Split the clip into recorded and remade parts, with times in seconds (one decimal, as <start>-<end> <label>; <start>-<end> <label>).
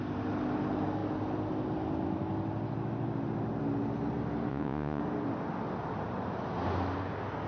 0.0-4.5 recorded; 4.5-5.0 remade; 5.0-7.5 recorded